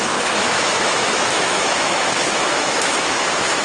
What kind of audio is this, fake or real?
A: fake